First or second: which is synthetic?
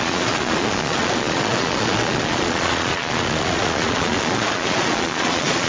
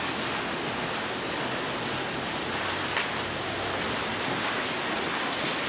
first